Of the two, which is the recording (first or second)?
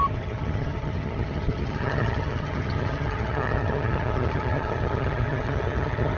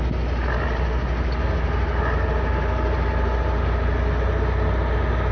second